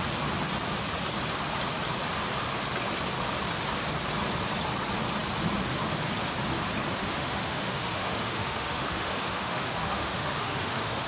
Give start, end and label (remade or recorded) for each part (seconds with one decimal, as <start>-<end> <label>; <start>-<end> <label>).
0.0-7.0 recorded; 7.0-11.1 remade

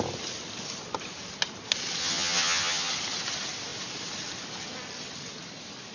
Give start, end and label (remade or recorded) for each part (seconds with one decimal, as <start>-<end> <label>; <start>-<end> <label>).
0.0-2.0 recorded; 2.0-2.9 remade; 2.9-5.9 recorded